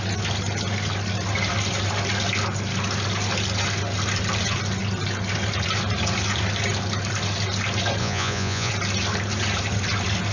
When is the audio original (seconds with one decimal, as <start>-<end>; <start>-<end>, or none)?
0.0-8.0; 8.7-10.3